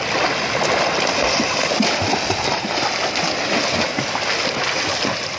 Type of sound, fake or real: real